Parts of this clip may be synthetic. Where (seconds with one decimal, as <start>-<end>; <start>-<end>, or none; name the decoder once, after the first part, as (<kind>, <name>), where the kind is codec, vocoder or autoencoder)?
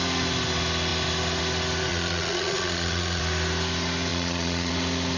1.9-3.2 (vocoder, Vocos); 4.1-4.7